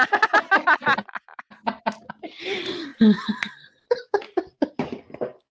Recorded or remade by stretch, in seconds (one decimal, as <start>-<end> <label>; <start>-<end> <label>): 0.0-2.9 recorded; 2.9-3.5 remade; 3.5-5.5 recorded